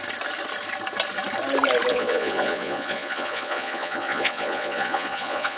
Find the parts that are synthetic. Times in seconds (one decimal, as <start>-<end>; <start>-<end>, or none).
1.9-5.6